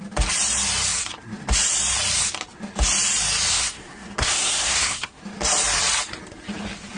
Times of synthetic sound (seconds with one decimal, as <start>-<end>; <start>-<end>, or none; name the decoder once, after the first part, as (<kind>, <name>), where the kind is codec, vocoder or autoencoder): 3.5-5.2 (codec, SNAC)